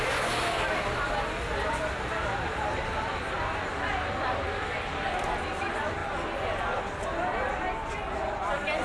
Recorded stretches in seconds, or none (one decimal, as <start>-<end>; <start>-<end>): 0.0-8.8